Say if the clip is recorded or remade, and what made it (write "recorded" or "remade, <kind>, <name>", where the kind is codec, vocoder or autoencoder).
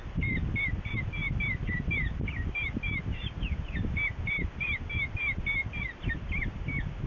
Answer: recorded